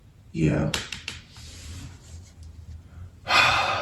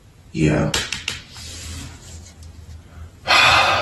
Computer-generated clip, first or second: first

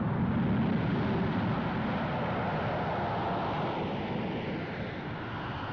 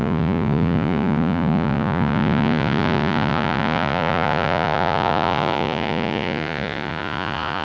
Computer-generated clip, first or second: second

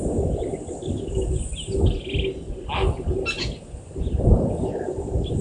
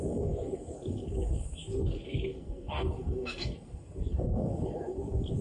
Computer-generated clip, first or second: second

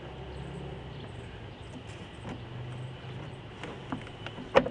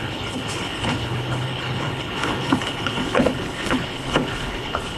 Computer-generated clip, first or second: second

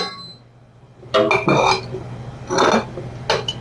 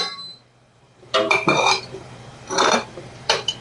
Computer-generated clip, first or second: second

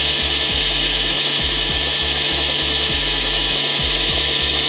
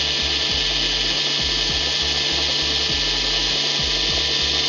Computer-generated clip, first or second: first